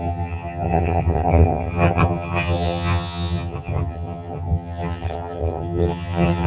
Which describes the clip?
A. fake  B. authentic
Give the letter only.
A